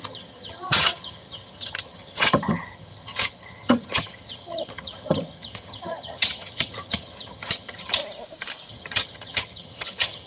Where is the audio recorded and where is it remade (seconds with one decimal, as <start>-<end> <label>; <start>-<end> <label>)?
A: 0.0-8.0 remade; 8.0-8.7 recorded; 8.7-10.3 remade